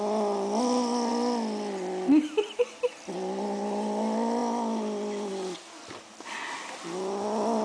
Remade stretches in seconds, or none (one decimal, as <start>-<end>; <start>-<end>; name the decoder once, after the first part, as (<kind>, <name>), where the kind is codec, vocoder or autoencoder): none